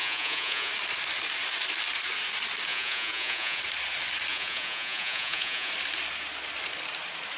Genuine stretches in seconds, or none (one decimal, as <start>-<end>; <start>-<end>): 0.7-2.7; 3.6-4.3; 5.7-7.4